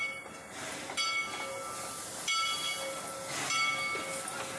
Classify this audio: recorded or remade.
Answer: recorded